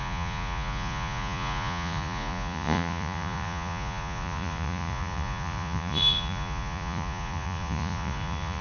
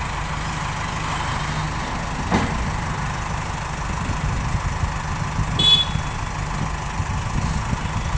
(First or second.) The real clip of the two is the second